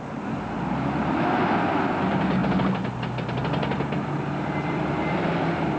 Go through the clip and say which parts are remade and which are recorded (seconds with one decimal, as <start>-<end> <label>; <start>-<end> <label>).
0.0-5.8 recorded